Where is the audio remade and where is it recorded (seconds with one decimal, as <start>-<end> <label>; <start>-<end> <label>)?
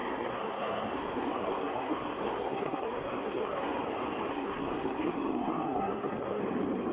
0.0-3.8 remade; 3.8-4.3 recorded; 4.3-6.4 remade; 6.4-6.9 recorded